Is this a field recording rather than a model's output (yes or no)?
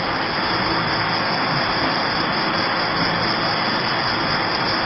yes